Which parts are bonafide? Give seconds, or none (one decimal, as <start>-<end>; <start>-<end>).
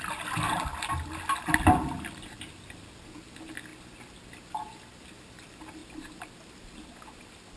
0.0-7.6